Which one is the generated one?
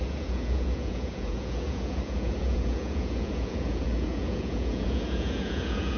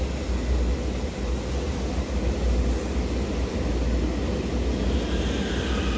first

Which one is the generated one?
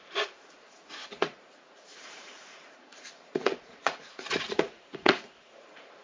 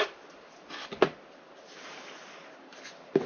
first